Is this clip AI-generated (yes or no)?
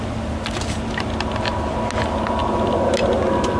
no